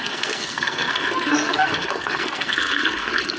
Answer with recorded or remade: remade